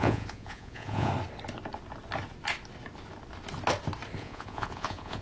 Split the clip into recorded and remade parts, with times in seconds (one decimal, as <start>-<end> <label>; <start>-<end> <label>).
0.0-1.1 remade; 1.1-4.2 recorded; 4.2-5.2 remade